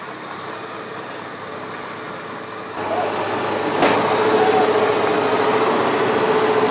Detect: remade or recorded recorded